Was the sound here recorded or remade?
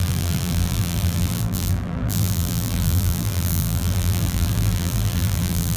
remade